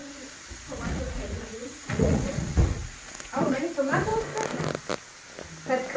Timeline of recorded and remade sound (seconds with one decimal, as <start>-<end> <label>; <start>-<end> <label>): 0.0-3.6 remade; 3.6-6.0 recorded